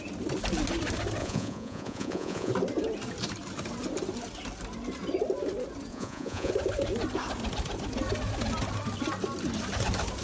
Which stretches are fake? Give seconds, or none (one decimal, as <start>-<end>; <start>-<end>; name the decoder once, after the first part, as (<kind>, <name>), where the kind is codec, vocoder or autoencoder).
1.2-2.5 (vocoder, Vocos); 5.9-6.5